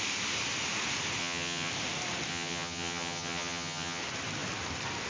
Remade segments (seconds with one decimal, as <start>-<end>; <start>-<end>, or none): 1.2-1.7; 2.3-4.0